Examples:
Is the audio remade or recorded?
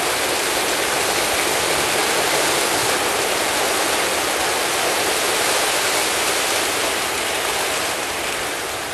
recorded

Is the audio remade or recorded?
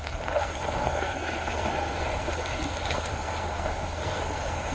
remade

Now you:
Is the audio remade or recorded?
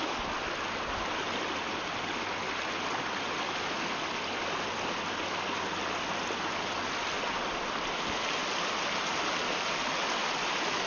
recorded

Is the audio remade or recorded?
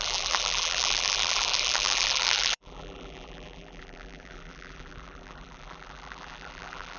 remade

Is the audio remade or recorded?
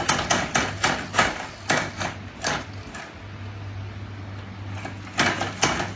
recorded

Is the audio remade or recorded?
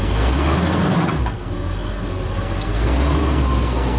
remade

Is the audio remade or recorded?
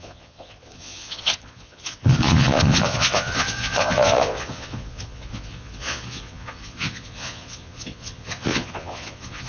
remade